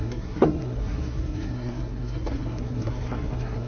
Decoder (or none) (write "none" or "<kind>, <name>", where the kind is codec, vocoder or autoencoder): codec, SNAC